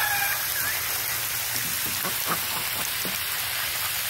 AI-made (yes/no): yes